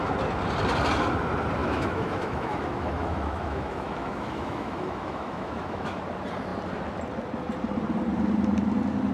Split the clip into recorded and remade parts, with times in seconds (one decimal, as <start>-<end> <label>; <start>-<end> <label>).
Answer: 0.0-1.6 recorded; 1.6-6.0 remade; 6.0-9.1 recorded